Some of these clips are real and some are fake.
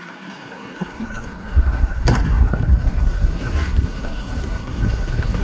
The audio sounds fake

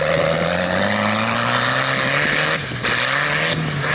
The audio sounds real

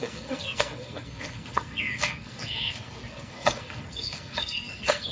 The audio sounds fake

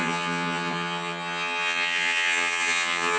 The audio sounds fake